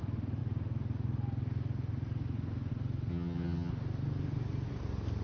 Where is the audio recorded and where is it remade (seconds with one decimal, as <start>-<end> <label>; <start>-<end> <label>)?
0.0-3.1 recorded; 3.1-3.7 remade; 3.7-5.2 recorded